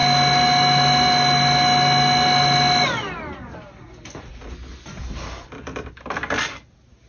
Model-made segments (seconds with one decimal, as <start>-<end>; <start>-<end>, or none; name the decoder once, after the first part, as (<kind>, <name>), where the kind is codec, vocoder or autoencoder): 4.7-5.9 (vocoder, BigVGAN v2)